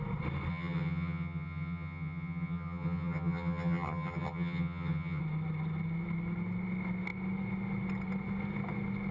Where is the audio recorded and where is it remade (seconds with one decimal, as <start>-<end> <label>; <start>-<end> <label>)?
0.0-0.5 recorded; 0.5-5.2 remade; 5.2-9.1 recorded